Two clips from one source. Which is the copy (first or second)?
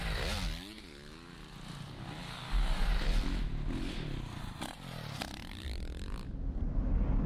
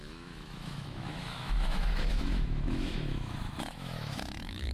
second